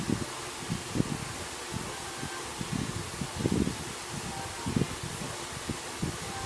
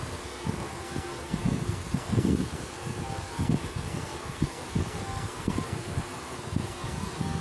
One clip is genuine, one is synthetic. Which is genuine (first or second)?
first